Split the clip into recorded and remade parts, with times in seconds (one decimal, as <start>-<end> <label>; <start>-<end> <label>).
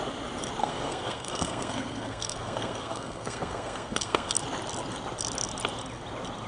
0.0-0.6 recorded; 0.6-4.3 remade; 4.3-6.5 recorded